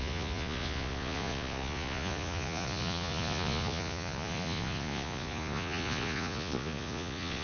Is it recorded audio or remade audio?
remade